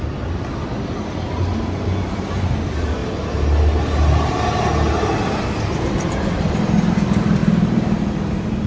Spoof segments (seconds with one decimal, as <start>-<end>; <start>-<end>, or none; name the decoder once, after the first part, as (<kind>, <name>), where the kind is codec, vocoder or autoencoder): 0.0-3.0 (vocoder, BigVGAN v2); 5.8-7.4